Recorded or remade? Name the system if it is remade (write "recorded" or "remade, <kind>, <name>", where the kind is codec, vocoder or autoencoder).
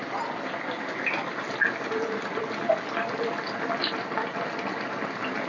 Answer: recorded